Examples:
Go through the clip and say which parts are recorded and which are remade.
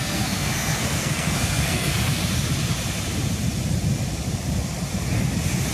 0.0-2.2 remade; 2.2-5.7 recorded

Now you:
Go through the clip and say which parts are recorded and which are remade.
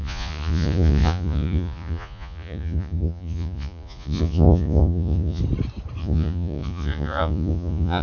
0.0-5.4 remade; 5.4-6.0 recorded; 6.0-8.0 remade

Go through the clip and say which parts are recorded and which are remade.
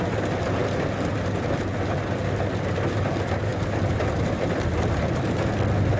0.0-6.0 recorded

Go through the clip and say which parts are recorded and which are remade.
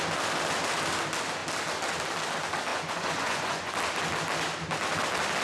0.0-2.7 recorded; 2.7-3.7 remade; 3.7-5.4 recorded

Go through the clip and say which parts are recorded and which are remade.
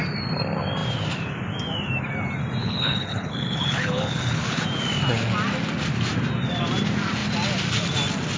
0.0-2.6 recorded; 2.6-4.6 remade; 4.6-8.4 recorded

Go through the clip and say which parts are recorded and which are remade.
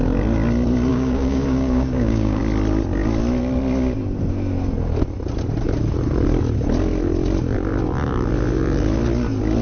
0.0-0.9 recorded; 0.9-2.4 remade; 2.4-9.6 recorded